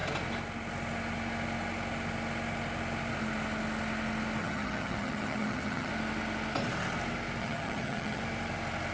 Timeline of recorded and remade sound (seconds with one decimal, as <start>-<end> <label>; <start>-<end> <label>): 0.0-4.4 recorded; 4.4-5.9 remade; 5.9-7.4 recorded; 7.4-8.2 remade; 8.2-8.9 recorded